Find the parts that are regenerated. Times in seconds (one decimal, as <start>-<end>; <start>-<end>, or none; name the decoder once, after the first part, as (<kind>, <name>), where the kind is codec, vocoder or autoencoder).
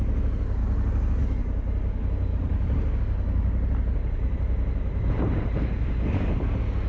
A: none